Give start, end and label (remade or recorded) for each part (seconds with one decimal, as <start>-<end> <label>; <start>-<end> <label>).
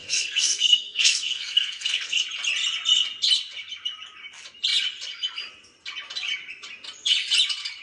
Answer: 0.0-2.2 remade; 2.2-7.8 recorded